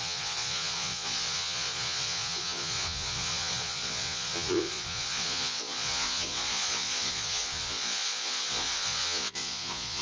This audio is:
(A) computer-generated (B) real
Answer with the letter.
A